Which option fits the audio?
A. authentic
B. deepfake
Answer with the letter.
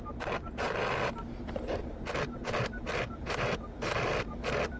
A